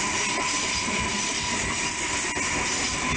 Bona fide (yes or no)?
yes